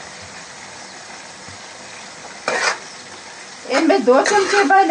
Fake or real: real